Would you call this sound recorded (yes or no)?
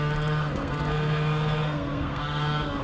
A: no